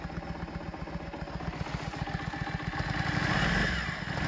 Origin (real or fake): real